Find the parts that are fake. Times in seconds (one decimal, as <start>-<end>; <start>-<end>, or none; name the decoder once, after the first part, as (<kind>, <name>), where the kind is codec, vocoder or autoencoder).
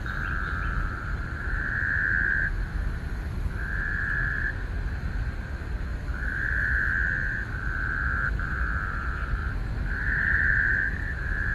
0.0-11.5 (vocoder, BigVGAN v2)